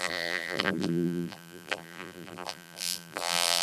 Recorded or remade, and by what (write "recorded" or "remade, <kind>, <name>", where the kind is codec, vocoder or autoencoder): remade, vocoder, BigVGAN v2